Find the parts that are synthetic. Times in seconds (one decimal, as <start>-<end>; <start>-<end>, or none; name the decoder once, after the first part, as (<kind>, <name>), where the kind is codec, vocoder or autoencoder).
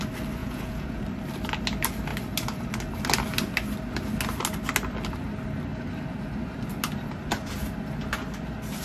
0.4-1.0 (vocoder, Vocos)